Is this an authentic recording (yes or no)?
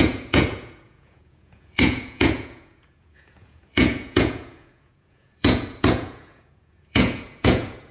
no